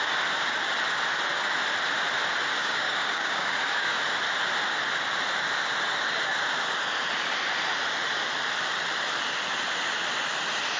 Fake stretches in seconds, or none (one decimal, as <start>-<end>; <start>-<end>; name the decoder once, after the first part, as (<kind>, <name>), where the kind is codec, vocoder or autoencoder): 2.6-4.0 (codec, DAC)